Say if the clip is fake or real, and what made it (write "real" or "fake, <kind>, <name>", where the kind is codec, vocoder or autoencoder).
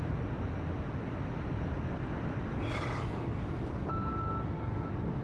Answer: real